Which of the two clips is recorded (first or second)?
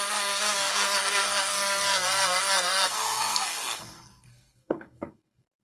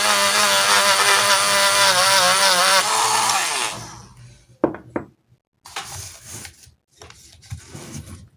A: second